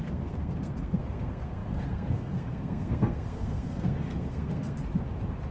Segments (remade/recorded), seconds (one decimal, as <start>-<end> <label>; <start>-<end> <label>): 0.0-4.8 remade; 4.8-5.5 recorded